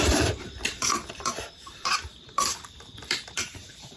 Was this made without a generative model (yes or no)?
no